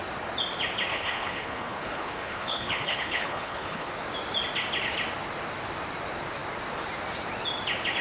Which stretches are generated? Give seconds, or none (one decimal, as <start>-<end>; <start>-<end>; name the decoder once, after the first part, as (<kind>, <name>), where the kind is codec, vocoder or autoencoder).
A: 0.9-3.9 (codec, HILCodec)